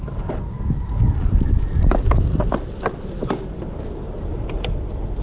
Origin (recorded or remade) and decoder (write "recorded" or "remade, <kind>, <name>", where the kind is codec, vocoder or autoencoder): recorded